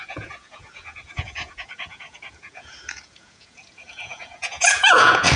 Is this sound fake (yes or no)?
yes